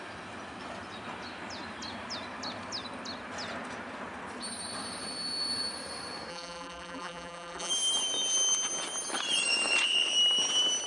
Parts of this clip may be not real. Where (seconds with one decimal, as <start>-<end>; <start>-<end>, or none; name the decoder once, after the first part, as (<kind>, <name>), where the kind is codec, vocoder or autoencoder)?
6.3-7.7 (vocoder, BigVGAN v2)